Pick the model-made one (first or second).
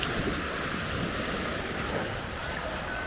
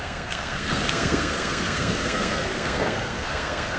second